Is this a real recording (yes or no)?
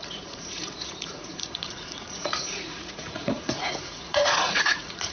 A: no